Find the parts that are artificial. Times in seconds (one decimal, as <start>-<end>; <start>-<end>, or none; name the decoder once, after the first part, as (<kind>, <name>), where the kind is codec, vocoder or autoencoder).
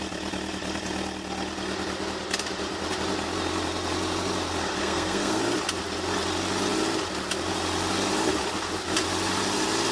4.8-5.4 (codec, SNAC)